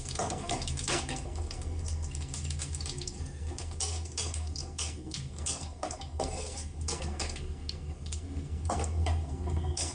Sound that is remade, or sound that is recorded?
remade